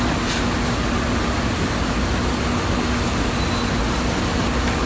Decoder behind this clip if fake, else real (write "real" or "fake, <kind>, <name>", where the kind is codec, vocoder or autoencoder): real